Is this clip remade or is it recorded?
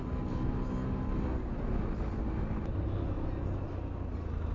recorded